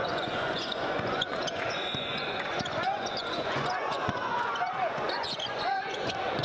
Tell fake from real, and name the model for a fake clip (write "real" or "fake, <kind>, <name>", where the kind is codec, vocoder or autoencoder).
fake, vocoder, Vocos